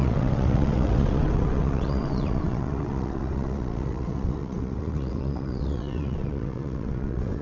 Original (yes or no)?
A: no